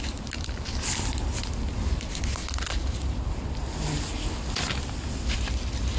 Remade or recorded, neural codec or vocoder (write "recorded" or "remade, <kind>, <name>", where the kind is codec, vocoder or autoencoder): recorded